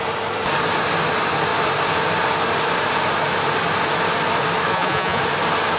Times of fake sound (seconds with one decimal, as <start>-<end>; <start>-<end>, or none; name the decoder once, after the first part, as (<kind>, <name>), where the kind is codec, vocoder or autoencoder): 4.7-5.2 (vocoder, Vocos)